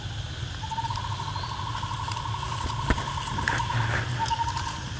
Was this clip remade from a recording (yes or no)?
no